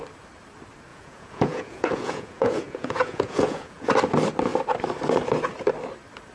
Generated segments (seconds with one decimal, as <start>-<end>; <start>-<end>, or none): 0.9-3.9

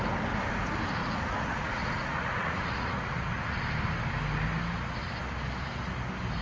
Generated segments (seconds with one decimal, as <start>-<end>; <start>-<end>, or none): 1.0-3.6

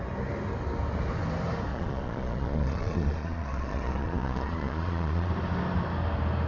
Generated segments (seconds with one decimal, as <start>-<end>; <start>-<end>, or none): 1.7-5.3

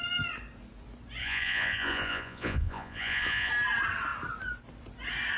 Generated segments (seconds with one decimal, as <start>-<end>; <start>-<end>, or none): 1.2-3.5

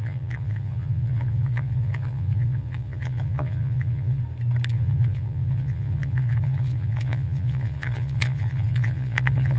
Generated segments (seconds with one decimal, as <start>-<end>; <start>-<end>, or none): 0.0-4.2; 4.7-9.6

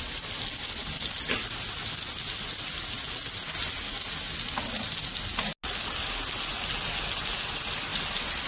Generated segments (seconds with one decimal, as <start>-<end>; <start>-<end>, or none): none

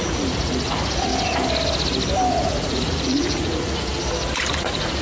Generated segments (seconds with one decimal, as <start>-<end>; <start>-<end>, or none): 0.0-1.1; 2.3-3.9; 4.5-5.0

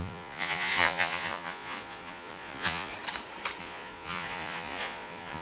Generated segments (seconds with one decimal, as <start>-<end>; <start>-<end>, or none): 0.0-2.9; 3.6-5.4